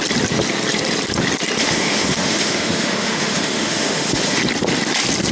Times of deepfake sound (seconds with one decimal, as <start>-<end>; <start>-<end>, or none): 1.6-4.4